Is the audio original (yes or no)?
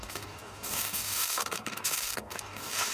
no